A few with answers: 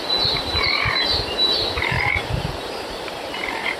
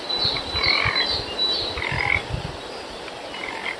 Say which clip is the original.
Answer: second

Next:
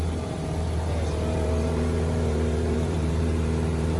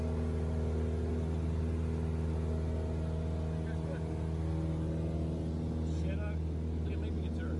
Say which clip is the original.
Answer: second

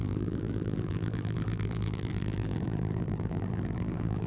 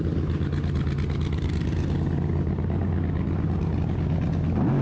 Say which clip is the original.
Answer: second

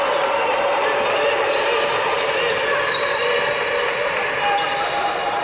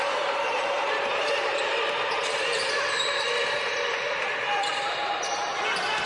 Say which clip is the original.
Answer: first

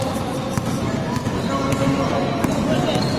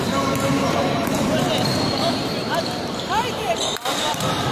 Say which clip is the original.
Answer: first